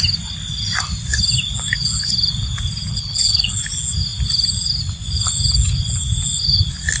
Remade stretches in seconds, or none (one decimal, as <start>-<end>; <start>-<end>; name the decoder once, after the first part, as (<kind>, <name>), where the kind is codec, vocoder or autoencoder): 2.9-3.6 (codec, HILCodec)